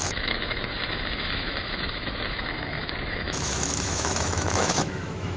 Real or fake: fake